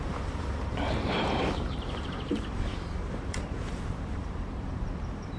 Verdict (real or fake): fake